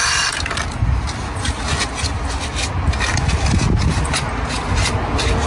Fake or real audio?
real